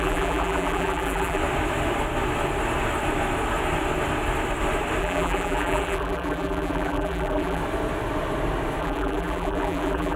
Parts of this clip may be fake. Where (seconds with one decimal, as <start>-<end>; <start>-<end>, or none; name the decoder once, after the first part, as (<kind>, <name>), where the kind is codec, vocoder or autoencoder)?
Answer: 0.0-1.4 (vocoder, BigVGAN v2); 5.0-7.6; 8.8-10.2